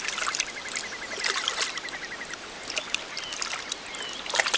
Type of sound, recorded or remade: recorded